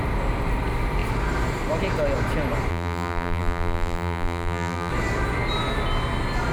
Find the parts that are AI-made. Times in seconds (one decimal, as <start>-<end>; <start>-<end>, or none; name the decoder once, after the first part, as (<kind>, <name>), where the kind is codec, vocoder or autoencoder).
2.7-4.9 (vocoder, BigVGAN v2)